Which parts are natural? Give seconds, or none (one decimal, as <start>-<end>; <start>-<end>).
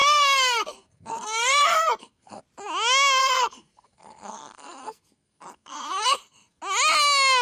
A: 2.4-3.2; 6.6-7.4